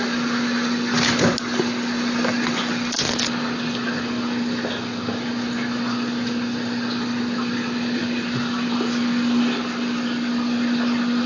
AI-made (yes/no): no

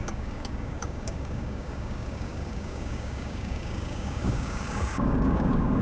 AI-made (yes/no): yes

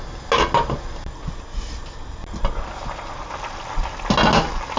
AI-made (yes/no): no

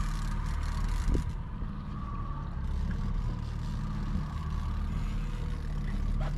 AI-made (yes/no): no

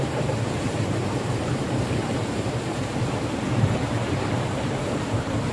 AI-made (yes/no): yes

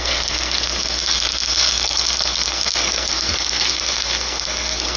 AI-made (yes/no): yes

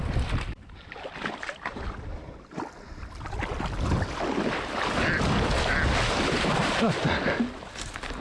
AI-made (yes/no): no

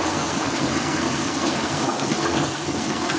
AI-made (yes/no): yes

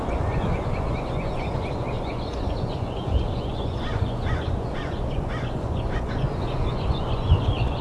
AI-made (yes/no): yes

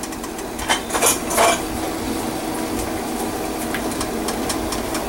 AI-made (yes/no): no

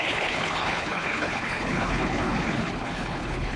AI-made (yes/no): yes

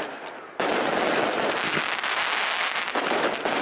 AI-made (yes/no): no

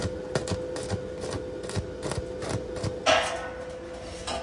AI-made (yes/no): no